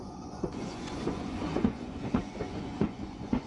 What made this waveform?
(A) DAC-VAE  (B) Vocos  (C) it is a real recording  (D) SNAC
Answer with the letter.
B